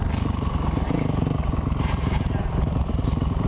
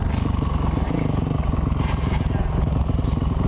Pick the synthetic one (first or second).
first